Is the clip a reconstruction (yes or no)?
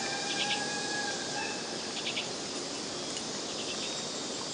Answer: no